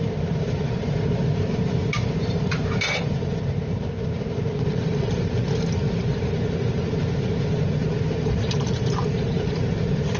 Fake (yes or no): yes